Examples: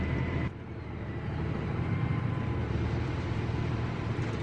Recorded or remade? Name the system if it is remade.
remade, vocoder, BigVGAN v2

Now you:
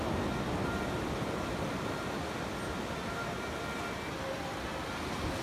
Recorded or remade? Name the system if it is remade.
recorded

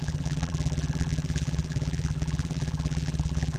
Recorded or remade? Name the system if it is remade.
remade, vocoder, BigVGAN v2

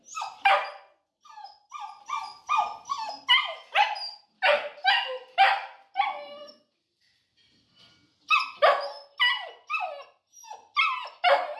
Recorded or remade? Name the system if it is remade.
recorded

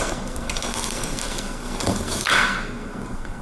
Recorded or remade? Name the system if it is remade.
remade, codec, SNAC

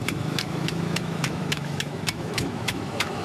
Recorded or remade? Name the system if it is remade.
remade, autoencoder, DAC-VAE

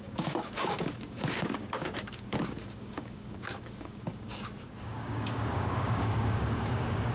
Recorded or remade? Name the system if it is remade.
remade, codec, DAC